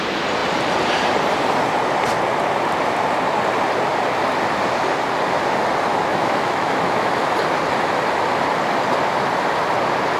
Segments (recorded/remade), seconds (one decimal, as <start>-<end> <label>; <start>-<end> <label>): 0.0-5.9 recorded; 5.9-7.1 remade; 7.1-10.2 recorded